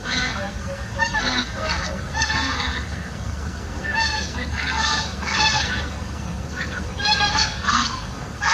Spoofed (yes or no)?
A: yes